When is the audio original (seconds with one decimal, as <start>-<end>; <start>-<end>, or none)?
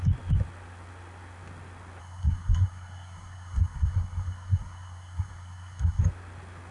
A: 0.0-2.0; 6.0-6.7